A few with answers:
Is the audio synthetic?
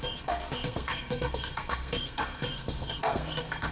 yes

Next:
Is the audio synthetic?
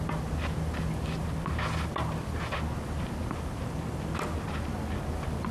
no